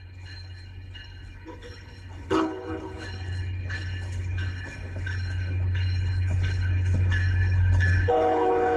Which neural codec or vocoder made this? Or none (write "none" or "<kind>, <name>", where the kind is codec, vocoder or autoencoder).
codec, HILCodec